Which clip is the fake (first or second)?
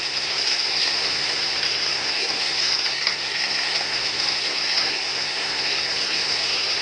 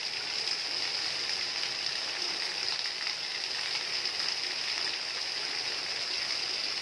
first